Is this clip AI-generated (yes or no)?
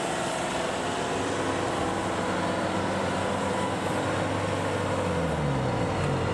no